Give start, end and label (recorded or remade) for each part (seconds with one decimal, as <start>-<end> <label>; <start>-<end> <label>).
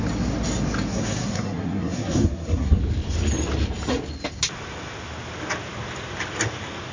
0.0-0.9 recorded; 0.9-2.8 remade; 2.8-6.9 recorded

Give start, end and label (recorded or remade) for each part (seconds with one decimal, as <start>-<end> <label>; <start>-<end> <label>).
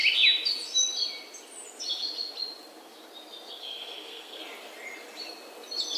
0.0-3.6 recorded; 3.6-4.4 remade; 4.4-6.0 recorded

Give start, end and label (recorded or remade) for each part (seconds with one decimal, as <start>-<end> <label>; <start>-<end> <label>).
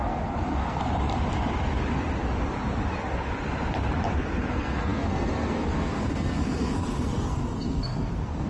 0.0-0.8 remade; 0.8-4.5 recorded; 4.5-8.5 remade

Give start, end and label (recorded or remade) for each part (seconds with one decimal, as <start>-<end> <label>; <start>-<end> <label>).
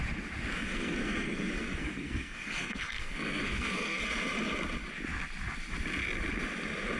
0.0-0.5 recorded; 0.5-4.0 remade; 4.0-7.0 recorded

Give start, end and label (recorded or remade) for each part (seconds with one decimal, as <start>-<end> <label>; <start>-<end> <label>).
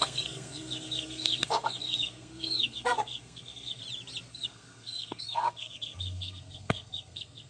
0.0-3.8 remade; 3.8-4.3 recorded; 4.3-7.5 remade